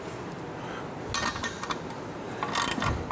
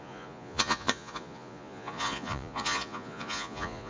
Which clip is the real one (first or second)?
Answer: first